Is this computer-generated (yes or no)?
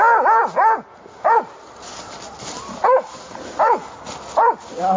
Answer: no